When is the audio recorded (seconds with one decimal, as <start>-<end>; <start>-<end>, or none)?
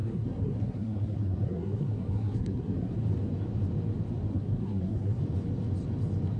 2.9-4.3; 5.2-6.4